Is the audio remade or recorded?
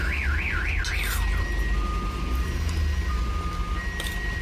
recorded